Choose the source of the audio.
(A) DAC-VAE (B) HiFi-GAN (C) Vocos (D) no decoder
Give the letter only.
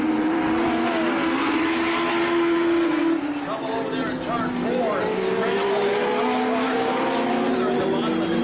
D